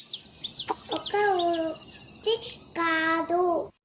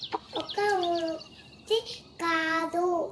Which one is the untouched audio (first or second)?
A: first